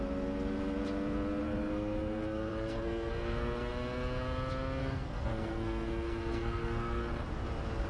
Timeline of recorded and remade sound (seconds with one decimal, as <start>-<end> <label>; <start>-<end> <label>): 0.0-1.4 recorded; 1.4-3.7 remade; 3.7-4.8 recorded; 4.8-7.1 remade; 7.1-7.9 recorded